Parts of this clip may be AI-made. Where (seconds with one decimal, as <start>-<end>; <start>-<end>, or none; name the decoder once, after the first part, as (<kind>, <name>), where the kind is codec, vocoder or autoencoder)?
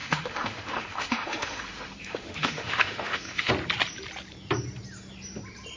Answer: 0.0-3.5 (autoencoder, DAC-VAE)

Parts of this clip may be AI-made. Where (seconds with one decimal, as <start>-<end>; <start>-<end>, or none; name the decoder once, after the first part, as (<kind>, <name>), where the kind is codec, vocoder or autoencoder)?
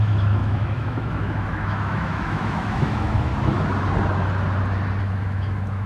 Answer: 0.0-3.3 (autoencoder, DAC-VAE); 5.0-5.9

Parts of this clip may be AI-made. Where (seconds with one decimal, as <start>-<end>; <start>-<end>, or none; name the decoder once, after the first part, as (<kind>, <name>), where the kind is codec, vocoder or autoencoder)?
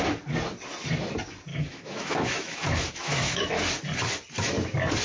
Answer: 1.5-3.5 (autoencoder, DAC-VAE)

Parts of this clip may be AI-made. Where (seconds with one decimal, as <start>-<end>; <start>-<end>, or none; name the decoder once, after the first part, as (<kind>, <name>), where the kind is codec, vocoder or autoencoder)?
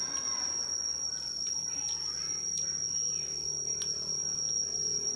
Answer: none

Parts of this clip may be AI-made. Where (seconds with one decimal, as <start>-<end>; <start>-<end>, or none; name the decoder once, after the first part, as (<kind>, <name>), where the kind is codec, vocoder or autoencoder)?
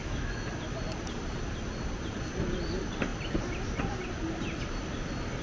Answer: 0.0-0.5 (autoencoder, DAC-VAE)